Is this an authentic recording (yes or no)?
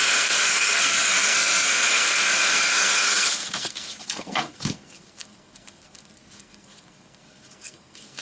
no